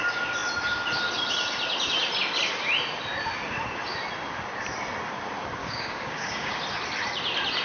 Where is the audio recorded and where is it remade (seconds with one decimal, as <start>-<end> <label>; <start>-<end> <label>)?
0.0-5.6 recorded; 5.6-6.6 remade; 6.6-7.6 recorded